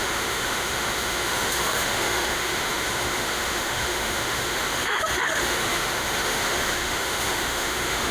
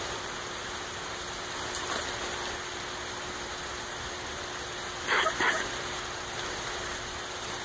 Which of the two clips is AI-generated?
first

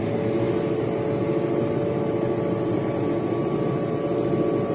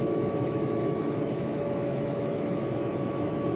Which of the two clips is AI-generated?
second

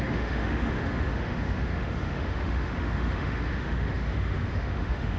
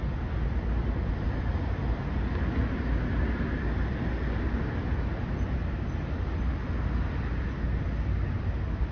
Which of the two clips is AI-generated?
first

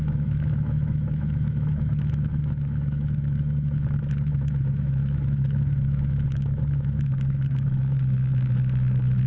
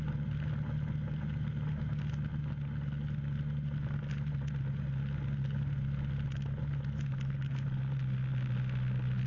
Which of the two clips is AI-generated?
first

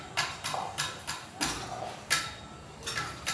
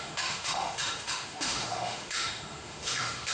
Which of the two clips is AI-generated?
second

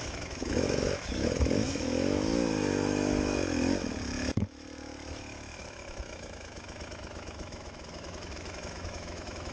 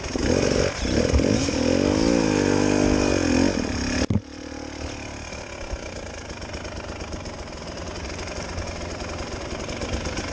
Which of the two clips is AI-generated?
first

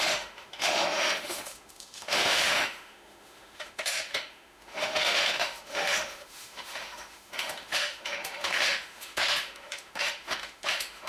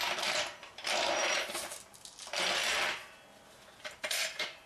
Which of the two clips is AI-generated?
first